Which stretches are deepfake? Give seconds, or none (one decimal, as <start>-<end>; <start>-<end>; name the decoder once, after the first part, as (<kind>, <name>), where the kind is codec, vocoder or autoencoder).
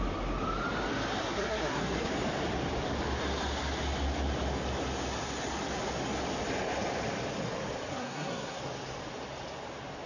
1.2-2.1 (codec, SNAC); 7.9-8.6